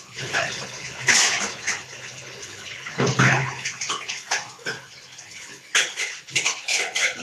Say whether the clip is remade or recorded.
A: remade